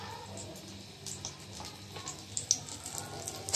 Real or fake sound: real